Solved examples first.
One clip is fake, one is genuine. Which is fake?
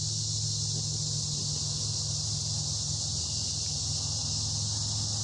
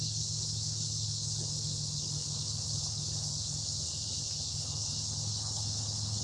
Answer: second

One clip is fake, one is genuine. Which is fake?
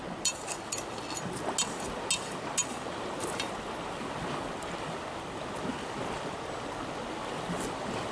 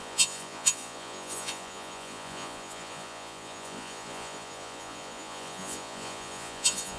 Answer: second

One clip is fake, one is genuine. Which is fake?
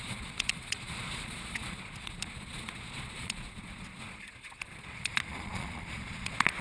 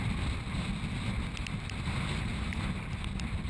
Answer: first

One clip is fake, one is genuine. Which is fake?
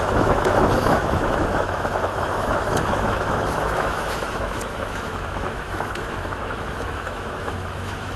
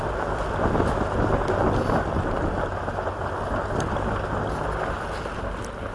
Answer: first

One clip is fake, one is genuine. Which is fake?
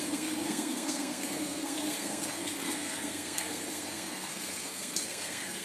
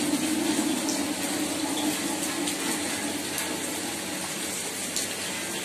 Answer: first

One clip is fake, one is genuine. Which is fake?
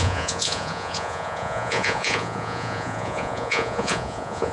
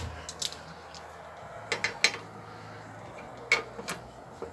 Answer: first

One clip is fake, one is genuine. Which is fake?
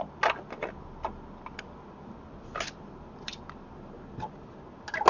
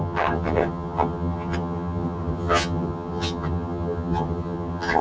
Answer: second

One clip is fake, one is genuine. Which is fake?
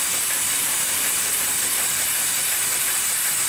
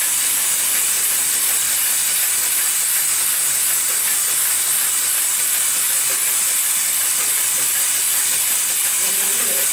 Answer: first